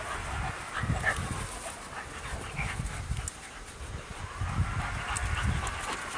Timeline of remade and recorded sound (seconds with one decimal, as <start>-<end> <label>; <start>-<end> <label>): 0.0-6.2 recorded